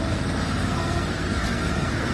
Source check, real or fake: fake